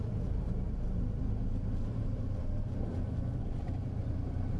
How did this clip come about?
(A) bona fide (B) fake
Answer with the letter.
B